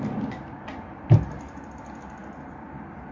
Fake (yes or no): no